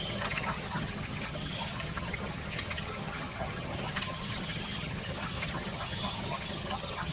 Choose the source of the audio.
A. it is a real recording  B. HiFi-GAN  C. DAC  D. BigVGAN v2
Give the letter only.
B